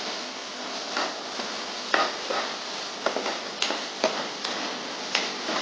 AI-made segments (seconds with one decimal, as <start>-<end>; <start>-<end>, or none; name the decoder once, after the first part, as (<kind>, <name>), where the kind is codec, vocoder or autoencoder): none